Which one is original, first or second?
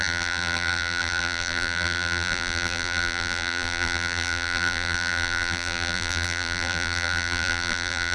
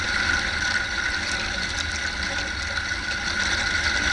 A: second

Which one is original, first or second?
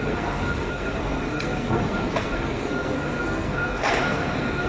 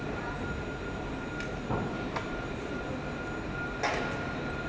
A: second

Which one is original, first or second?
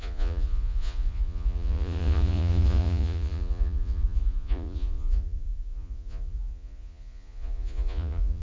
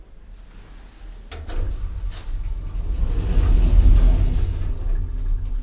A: second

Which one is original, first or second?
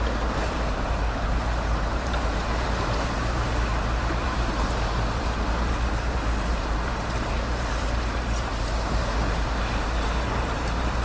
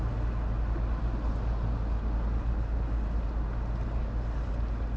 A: second